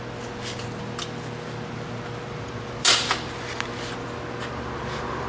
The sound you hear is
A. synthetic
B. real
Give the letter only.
B